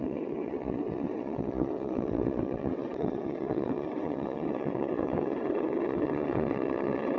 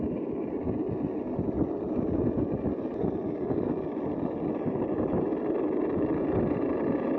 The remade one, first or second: first